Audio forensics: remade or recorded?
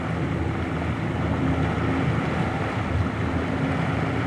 recorded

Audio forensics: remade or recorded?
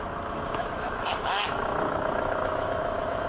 remade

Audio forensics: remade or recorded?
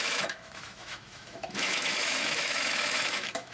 remade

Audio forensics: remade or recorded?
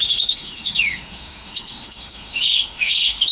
remade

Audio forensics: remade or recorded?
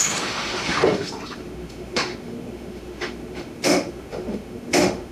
remade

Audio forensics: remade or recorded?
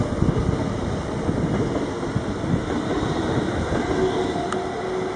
recorded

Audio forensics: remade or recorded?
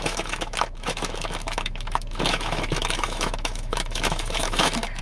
remade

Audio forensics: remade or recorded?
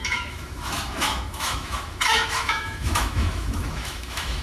remade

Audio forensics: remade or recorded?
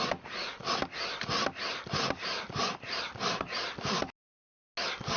recorded